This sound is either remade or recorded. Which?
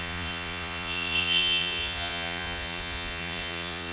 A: remade